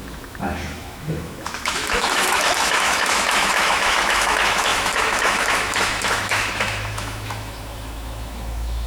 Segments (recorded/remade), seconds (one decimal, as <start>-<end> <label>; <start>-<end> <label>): 0.0-8.9 remade